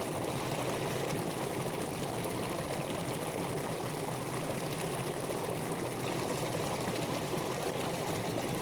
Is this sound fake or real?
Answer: real